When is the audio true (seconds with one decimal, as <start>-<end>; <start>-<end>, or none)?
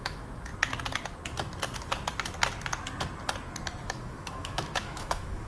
0.5-3.8